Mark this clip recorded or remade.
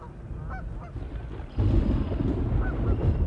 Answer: recorded